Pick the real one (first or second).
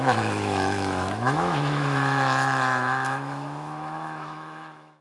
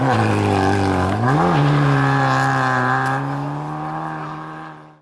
second